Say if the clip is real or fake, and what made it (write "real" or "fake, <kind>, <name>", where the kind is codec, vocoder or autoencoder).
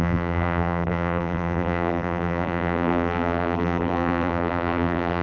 fake, vocoder, BigVGAN v2